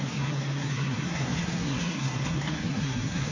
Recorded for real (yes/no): no